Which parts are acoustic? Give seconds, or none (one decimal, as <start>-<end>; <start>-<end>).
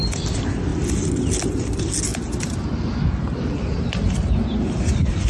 0.0-5.3